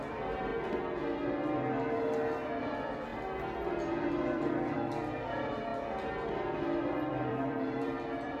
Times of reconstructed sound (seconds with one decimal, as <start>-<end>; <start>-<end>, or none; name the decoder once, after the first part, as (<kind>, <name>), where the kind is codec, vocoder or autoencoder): 0.0-0.5 (vocoder, BigVGAN v2); 2.6-5.7; 6.8-8.4